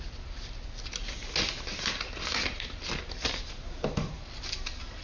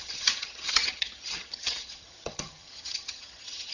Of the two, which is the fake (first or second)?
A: second